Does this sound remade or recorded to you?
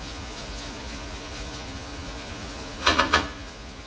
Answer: remade